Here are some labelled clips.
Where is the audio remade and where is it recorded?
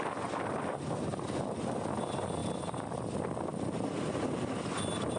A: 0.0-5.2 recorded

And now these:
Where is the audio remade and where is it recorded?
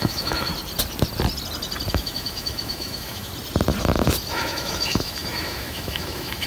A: 0.0-0.5 remade; 0.5-1.9 recorded; 1.9-3.3 remade; 3.3-4.3 recorded; 4.3-6.5 remade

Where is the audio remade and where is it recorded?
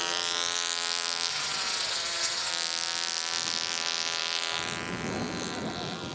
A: 0.0-1.3 recorded; 1.3-2.5 remade; 2.5-6.1 recorded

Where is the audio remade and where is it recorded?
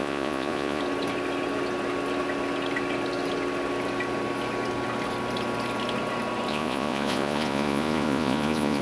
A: 0.0-0.8 remade; 0.8-6.5 recorded; 6.5-8.8 remade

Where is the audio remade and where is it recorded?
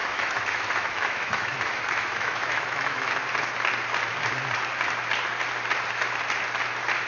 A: 0.0-3.2 remade; 3.2-7.1 recorded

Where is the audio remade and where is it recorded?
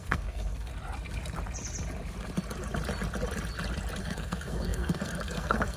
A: 0.0-0.7 remade; 0.7-4.0 recorded; 4.0-5.8 remade